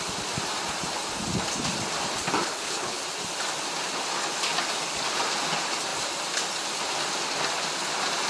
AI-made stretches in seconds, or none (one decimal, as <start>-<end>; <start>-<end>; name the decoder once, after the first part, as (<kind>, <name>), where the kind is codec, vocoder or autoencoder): 2.4-3.0 (codec, HILCodec)